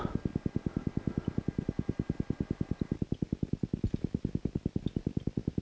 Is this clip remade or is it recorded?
recorded